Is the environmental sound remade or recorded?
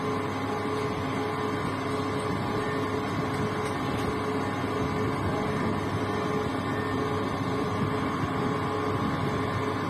recorded